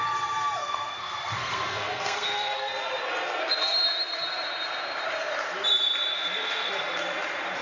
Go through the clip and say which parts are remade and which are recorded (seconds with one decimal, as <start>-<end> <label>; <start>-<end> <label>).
0.0-0.6 recorded; 0.6-2.7 remade; 2.7-6.1 recorded; 6.1-6.7 remade; 6.7-7.6 recorded